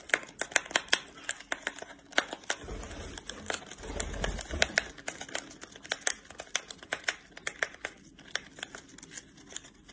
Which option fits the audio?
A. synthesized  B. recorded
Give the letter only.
B